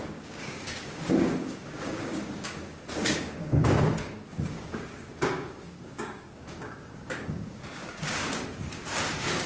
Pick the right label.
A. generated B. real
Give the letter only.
A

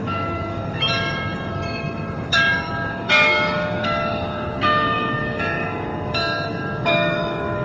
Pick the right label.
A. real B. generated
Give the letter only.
B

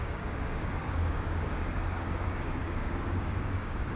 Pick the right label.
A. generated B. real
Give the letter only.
A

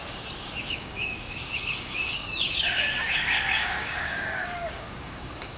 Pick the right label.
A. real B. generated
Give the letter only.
B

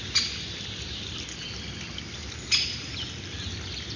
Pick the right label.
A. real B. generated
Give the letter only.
A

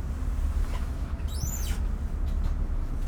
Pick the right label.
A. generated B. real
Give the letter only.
B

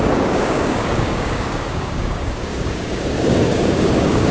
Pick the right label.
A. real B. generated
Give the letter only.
B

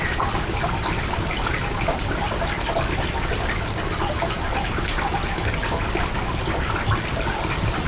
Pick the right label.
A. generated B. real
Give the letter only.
B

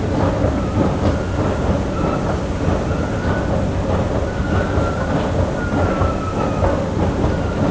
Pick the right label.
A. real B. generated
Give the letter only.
A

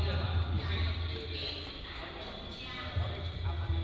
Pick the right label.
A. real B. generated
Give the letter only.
A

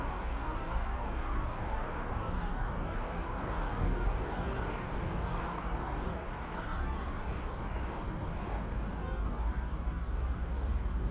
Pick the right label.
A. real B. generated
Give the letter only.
B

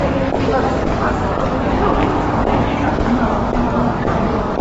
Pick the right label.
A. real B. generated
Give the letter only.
B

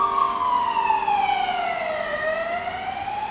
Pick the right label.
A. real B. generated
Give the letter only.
A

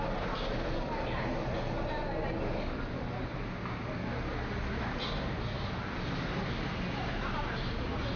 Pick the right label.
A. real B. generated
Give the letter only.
A